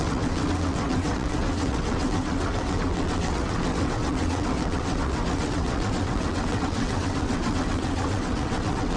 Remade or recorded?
remade